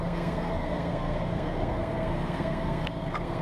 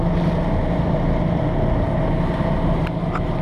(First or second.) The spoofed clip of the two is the first